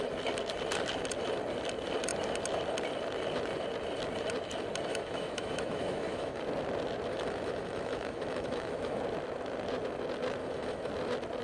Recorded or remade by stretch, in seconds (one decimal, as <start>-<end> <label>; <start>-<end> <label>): 0.0-4.9 recorded; 4.9-6.4 remade; 6.4-7.1 recorded; 7.1-9.0 remade; 9.0-10.4 recorded; 10.4-10.9 remade; 10.9-11.4 recorded